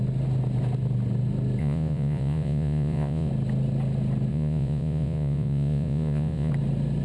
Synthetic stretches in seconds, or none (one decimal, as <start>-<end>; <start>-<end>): 1.6-3.3; 4.3-6.5